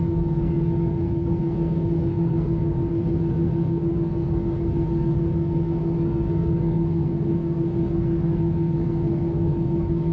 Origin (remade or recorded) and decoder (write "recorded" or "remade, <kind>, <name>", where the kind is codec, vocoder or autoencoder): remade, codec, SNAC